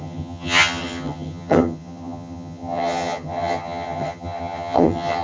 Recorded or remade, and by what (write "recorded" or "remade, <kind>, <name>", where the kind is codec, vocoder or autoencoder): remade, vocoder, HiFi-GAN